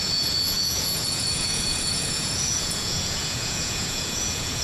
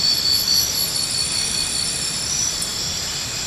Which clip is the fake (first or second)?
first